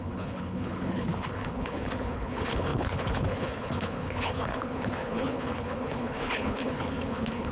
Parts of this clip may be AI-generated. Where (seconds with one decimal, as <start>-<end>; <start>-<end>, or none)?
0.0-7.5